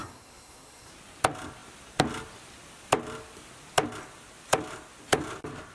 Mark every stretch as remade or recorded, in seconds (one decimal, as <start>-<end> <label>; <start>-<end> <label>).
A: 0.0-0.9 remade; 0.9-5.7 recorded